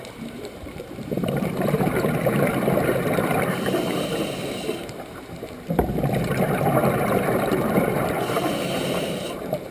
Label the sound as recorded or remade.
remade